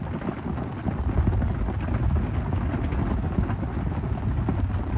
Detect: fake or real real